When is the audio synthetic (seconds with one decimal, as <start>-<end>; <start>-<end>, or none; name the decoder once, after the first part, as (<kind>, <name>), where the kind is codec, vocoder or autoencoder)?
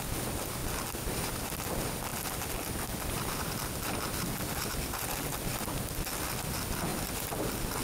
none